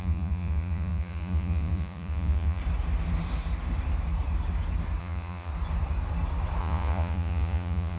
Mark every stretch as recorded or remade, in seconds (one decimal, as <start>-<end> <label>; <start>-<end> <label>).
0.0-2.6 remade; 2.6-5.0 recorded; 5.0-5.5 remade; 5.5-6.6 recorded; 6.6-8.0 remade